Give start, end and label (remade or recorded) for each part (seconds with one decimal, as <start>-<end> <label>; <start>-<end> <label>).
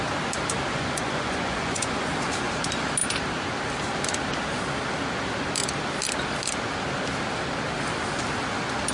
0.0-0.7 recorded; 0.7-2.1 remade; 2.1-8.9 recorded